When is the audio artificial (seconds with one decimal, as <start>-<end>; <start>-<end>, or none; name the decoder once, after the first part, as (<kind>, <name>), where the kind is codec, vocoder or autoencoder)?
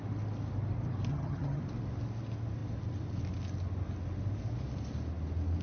1.1-1.6 (vocoder, HiFi-GAN)